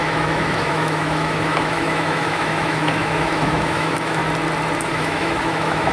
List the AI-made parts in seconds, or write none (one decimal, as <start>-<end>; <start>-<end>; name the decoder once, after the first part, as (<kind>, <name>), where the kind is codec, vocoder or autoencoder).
0.0-4.2 (autoencoder, DAC-VAE); 4.9-5.9